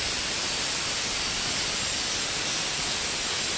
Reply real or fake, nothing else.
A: real